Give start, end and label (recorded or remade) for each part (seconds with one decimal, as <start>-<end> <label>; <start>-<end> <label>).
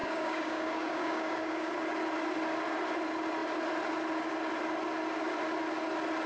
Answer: 0.0-1.7 remade; 1.7-6.3 recorded